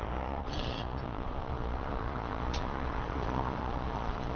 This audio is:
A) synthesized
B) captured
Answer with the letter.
A